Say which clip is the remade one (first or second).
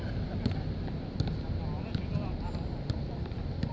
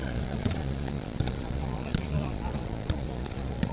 second